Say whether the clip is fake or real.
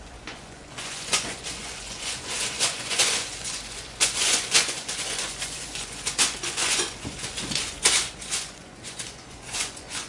fake